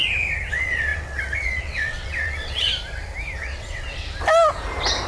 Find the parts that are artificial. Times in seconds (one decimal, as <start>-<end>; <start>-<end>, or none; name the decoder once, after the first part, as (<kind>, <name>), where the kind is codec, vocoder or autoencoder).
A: 0.5-2.7 (vocoder, WaveNeXt); 3.4-4.2